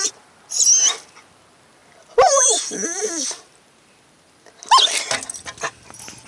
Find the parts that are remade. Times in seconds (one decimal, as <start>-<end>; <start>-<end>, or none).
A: none